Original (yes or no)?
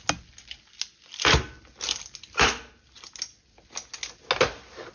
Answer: yes